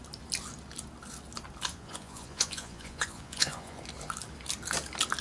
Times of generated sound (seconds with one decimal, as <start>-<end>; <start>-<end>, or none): 1.7-3.8